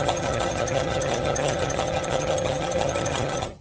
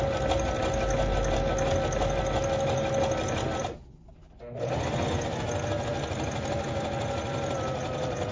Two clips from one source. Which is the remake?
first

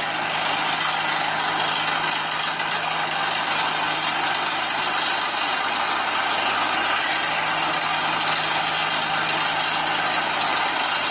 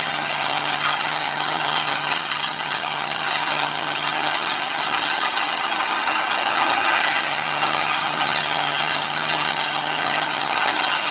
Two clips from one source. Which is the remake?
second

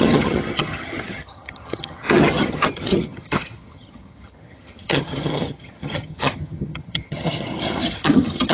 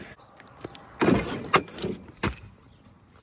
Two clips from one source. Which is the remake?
first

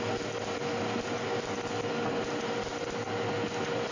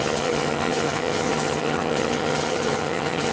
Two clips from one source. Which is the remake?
second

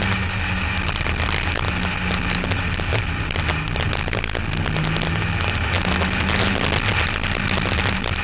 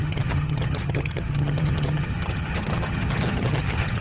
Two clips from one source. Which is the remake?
second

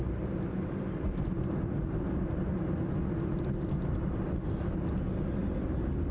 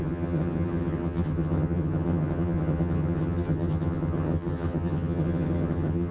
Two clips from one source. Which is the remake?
second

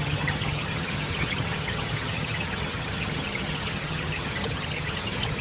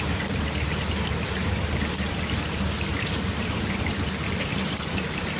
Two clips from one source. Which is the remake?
first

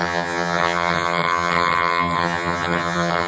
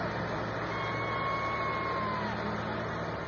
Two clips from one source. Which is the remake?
first